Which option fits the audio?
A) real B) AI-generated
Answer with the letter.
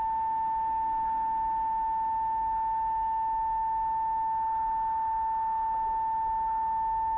A